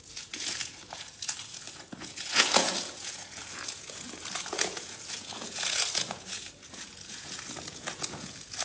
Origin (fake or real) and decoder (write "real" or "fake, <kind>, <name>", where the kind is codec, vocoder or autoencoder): fake, vocoder, Vocos